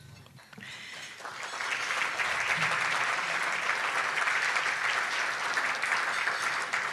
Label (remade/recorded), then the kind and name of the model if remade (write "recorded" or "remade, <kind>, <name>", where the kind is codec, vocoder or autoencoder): recorded